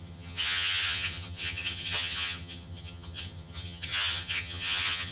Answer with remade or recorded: remade